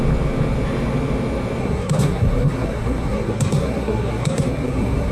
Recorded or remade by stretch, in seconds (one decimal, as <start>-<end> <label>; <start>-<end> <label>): 0.0-1.6 recorded; 1.6-5.1 remade